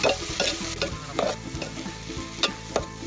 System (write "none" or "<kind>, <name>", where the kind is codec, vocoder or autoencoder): none